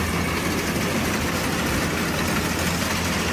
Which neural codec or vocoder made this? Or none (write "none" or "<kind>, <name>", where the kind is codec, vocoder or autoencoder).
none